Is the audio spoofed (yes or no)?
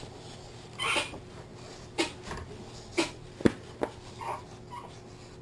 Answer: no